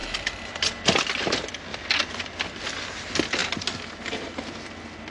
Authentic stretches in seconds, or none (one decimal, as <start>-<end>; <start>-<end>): 0.8-3.4; 4.4-5.1